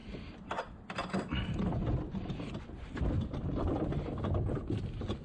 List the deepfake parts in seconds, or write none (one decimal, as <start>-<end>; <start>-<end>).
none